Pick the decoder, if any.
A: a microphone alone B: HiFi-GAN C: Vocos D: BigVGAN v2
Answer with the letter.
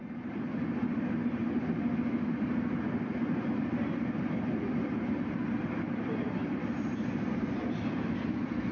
A